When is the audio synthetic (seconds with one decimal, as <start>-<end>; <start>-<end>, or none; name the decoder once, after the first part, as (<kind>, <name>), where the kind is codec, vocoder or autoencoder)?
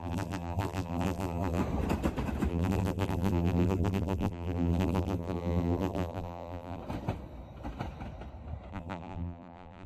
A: 0.0-1.6 (vocoder, BigVGAN v2); 2.5-6.8; 8.7-9.9